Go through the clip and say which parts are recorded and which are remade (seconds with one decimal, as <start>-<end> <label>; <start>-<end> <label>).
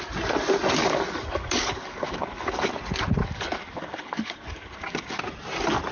0.0-0.8 recorded; 0.8-2.7 remade; 2.7-3.2 recorded; 3.2-5.2 remade; 5.2-5.9 recorded